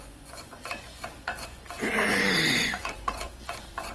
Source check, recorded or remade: remade